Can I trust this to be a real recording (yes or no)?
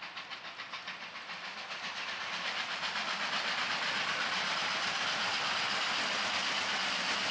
yes